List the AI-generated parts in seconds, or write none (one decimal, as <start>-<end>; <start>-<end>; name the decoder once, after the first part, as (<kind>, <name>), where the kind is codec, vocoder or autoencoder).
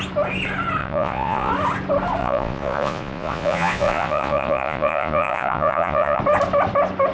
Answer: 0.8-1.5 (vocoder, Vocos); 2.2-6.2